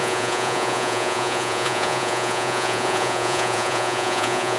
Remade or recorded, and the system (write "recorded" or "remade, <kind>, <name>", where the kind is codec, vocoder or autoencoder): remade, vocoder, Vocos